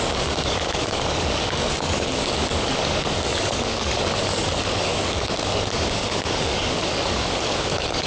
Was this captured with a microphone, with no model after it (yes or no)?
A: no